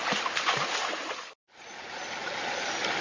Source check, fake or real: real